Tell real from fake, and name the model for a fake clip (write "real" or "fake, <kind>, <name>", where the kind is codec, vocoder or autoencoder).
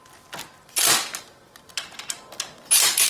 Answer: real